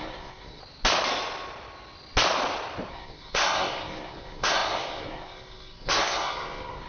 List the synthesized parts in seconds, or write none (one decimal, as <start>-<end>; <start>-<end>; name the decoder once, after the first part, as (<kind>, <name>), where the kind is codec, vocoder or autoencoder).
0.0-0.6 (codec, SNAC); 2.9-6.9